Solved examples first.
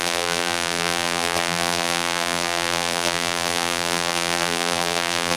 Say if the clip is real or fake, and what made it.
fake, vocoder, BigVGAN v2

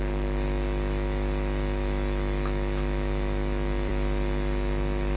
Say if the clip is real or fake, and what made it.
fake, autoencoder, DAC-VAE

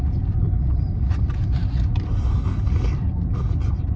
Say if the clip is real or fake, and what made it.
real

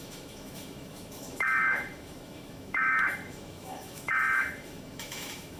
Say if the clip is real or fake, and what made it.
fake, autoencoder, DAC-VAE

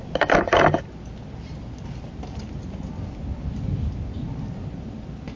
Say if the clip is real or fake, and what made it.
real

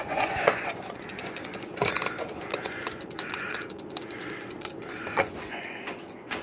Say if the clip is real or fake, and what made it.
fake, vocoder, Vocos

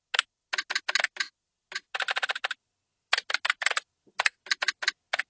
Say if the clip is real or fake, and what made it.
real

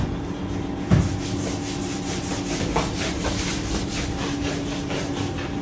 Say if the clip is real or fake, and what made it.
real